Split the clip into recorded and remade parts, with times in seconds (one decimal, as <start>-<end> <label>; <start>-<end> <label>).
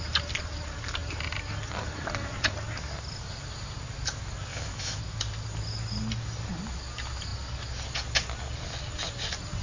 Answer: 0.0-4.5 recorded; 4.5-5.0 remade; 5.0-9.6 recorded